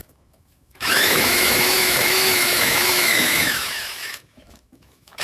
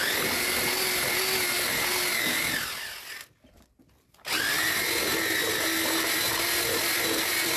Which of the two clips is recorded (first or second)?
second